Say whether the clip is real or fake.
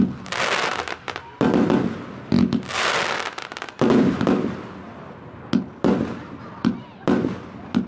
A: real